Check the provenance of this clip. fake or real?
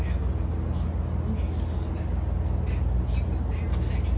real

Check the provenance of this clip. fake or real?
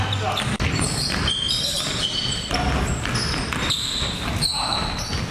real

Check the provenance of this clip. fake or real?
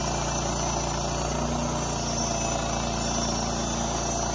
real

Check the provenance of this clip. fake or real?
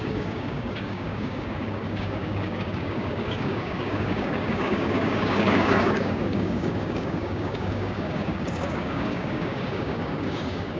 fake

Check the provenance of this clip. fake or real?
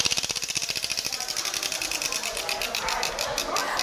real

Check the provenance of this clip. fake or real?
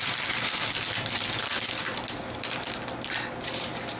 real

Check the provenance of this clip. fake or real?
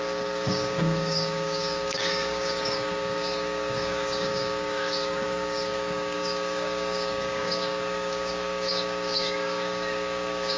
fake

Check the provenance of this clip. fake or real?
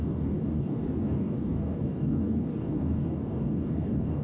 fake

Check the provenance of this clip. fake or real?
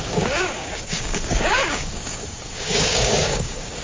fake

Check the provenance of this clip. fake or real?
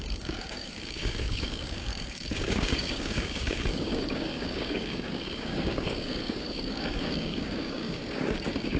fake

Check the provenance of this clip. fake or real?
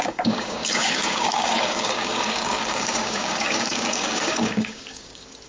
fake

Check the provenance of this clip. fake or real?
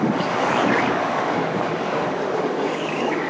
fake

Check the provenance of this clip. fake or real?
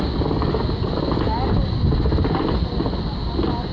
real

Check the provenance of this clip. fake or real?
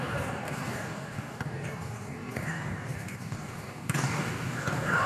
fake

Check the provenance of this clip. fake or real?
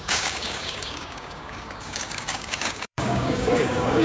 fake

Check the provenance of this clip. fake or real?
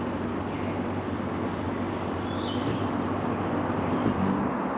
real